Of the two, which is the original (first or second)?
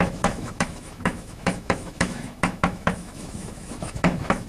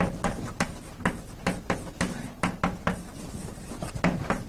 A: second